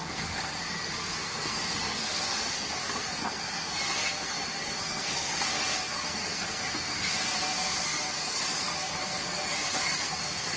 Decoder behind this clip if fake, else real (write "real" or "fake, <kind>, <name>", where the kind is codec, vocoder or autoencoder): fake, codec, SNAC